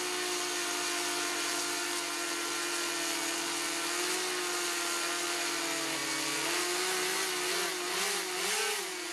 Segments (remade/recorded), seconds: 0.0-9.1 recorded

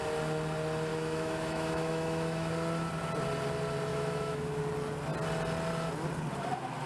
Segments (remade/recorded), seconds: 0.0-0.9 recorded; 0.9-2.5 remade; 2.5-3.9 recorded; 3.9-4.6 remade; 4.6-6.9 recorded